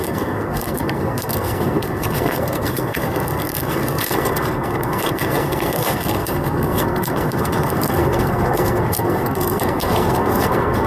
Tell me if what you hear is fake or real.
fake